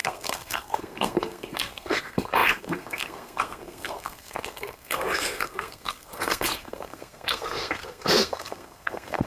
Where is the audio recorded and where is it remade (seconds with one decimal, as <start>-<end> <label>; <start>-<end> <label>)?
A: 0.0-9.3 remade